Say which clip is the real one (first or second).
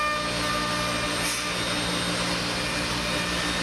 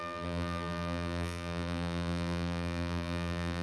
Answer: first